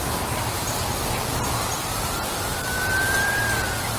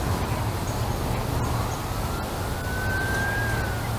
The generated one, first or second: first